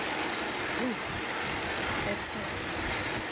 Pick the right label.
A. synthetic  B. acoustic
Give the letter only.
B